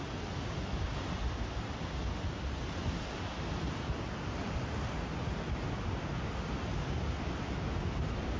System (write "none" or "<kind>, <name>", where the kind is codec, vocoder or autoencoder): none